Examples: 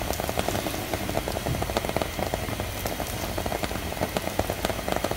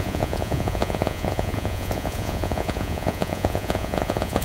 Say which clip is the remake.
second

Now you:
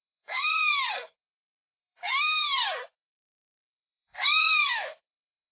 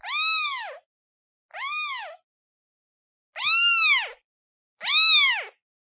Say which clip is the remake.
first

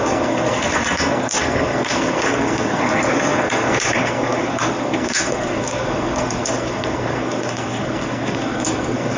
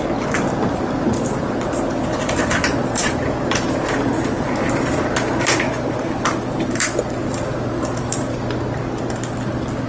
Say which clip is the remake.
first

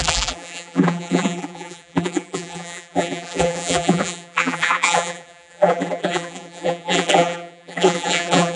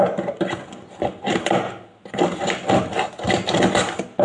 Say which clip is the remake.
first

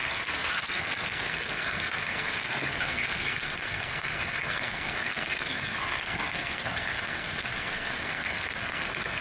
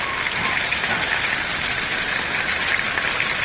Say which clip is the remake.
first